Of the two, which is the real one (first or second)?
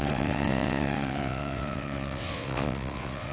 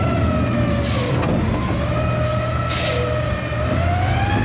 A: second